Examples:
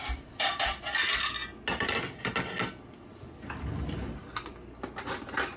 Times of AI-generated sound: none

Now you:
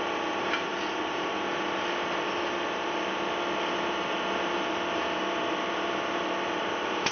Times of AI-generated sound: none

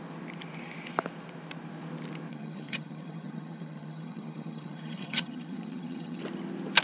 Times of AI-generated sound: 2.3-6.2 (vocoder, HiFi-GAN)

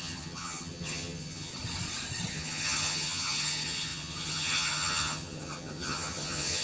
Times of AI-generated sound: 0.0-1.5 (vocoder, HiFi-GAN); 2.3-6.6

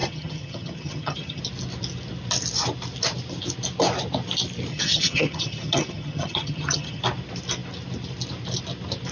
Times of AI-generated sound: 0.0-1.4 (vocoder, HiFi-GAN); 4.7-7.0

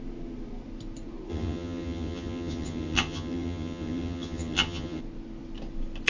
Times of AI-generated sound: 1.3-5.0 (vocoder, HiFi-GAN)

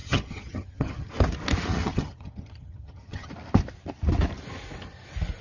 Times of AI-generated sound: 0.0-1.1 (vocoder, HiFi-GAN); 1.7-3.3